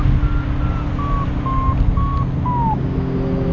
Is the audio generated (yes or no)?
no